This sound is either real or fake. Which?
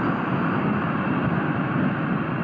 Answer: real